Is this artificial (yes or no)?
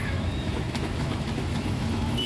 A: yes